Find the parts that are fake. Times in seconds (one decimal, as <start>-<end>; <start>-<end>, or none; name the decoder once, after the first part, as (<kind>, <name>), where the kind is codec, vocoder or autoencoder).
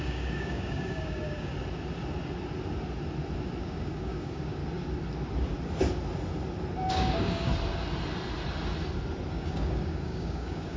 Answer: 0.0-1.5 (codec, DAC); 3.6-4.6; 6.9-7.5; 9.3-10.8